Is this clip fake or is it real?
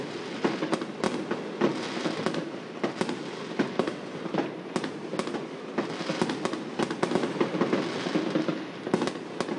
real